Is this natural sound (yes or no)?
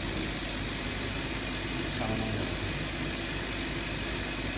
yes